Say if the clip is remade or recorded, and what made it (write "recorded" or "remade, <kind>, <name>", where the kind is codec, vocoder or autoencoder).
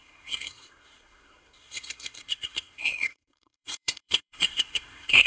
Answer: remade, codec, SNAC